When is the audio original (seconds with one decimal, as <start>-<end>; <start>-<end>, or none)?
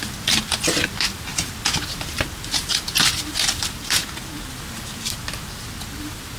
4.0-5.7